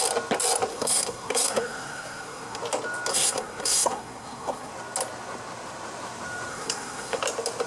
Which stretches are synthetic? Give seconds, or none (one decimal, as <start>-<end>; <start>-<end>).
0.7-2.6; 3.1-4.7; 6.5-7.2